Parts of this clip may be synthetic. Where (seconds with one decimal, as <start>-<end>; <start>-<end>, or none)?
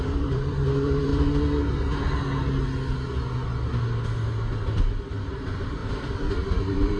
0.0-1.1; 5.3-5.8; 6.6-7.0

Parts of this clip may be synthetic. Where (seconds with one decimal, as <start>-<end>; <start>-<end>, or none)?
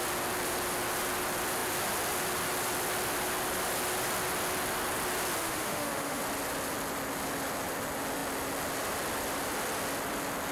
5.4-6.2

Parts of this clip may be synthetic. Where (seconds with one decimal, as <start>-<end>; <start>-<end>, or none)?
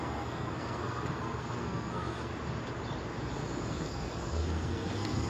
0.0-2.3; 3.7-5.3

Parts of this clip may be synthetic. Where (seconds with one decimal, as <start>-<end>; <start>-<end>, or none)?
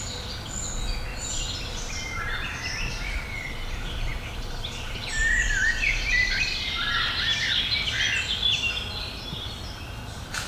1.1-3.5